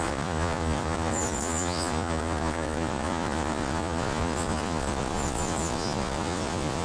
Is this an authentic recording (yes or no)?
no